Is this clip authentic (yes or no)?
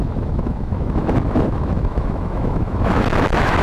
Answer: no